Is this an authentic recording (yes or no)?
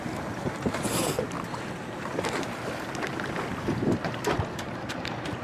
yes